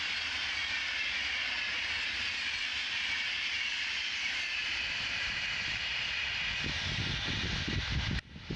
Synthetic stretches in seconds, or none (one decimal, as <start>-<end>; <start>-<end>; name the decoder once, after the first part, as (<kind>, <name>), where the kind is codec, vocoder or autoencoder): 0.6-5.8 (vocoder, BigVGAN v2)